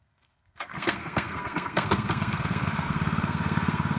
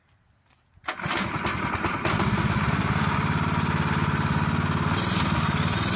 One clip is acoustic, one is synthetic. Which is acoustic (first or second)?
second